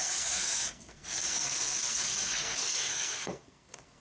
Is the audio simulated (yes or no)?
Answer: yes